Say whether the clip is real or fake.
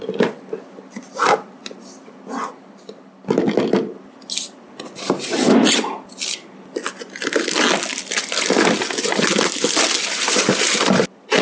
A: real